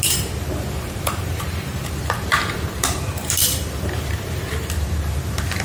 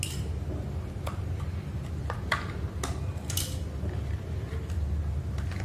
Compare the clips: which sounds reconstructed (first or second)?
first